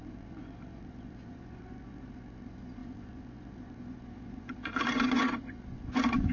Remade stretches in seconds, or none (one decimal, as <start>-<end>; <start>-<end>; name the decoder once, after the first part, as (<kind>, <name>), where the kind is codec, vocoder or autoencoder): 0.0-6.3 (vocoder, Vocos)